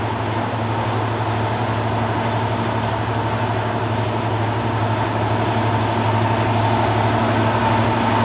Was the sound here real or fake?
real